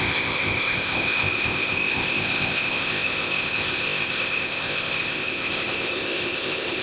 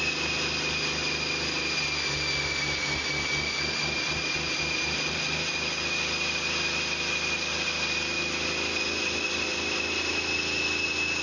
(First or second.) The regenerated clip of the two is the first